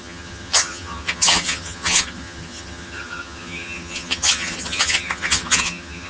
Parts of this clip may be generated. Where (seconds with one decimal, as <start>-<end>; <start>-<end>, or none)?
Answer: 0.0-6.1